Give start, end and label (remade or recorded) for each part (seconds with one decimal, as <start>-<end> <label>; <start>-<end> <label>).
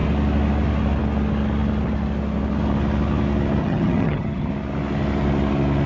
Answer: 0.0-3.6 recorded; 3.6-4.5 remade; 4.5-5.9 recorded